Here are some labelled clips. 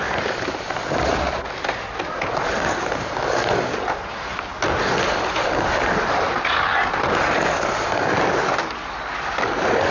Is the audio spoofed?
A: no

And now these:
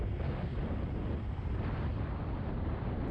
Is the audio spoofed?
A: no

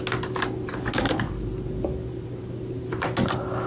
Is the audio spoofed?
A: no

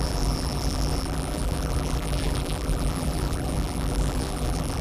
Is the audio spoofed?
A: yes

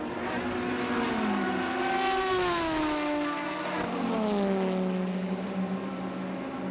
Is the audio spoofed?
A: no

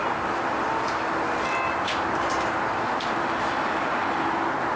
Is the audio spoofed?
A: yes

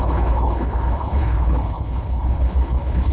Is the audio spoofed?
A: yes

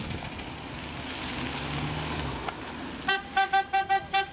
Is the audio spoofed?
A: no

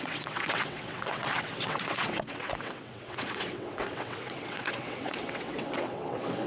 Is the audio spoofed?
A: yes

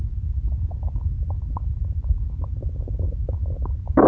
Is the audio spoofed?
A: no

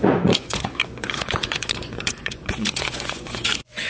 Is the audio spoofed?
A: yes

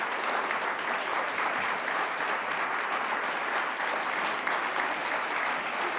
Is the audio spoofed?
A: no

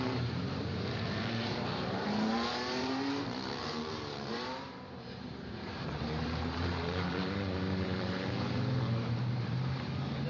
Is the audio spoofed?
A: yes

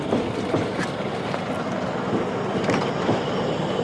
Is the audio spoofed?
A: no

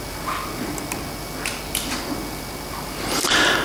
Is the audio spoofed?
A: no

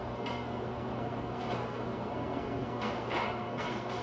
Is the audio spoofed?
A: yes